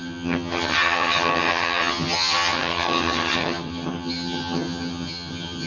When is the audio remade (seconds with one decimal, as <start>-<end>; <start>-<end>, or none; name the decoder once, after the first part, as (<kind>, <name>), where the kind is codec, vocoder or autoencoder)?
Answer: 0.0-5.7 (vocoder, HiFi-GAN)